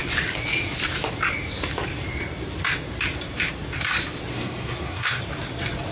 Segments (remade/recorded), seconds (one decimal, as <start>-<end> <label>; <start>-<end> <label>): 0.0-4.3 recorded; 4.3-5.2 remade; 5.2-5.9 recorded